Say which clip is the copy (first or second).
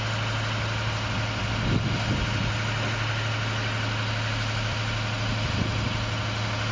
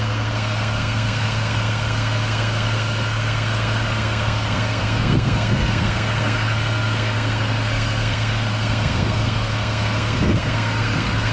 second